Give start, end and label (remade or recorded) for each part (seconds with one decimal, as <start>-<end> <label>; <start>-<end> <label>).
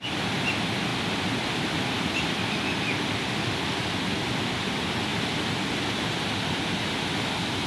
0.0-0.9 recorded; 0.9-3.3 remade; 3.3-5.1 recorded; 5.1-5.7 remade; 5.7-7.7 recorded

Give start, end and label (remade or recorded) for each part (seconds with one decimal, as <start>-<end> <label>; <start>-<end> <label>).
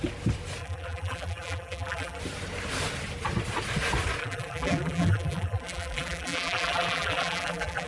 0.0-0.6 recorded; 0.6-2.2 remade; 2.2-4.2 recorded; 4.2-7.9 remade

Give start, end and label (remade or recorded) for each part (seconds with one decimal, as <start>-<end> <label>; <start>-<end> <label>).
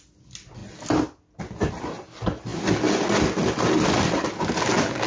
0.0-5.1 recorded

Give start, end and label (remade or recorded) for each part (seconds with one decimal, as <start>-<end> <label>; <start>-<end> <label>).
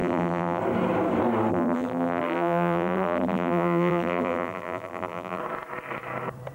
0.0-0.6 remade; 0.6-1.5 recorded; 1.5-5.4 remade; 5.4-6.5 recorded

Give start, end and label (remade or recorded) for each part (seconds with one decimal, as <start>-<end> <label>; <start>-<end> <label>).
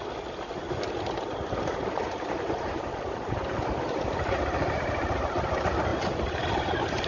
0.0-0.5 recorded; 0.5-4.8 remade; 4.8-5.9 recorded; 5.9-7.1 remade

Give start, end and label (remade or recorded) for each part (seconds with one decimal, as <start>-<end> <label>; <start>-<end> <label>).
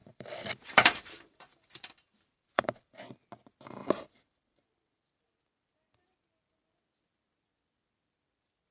0.0-3.0 remade; 3.0-3.8 recorded; 3.8-4.6 remade; 4.6-8.7 recorded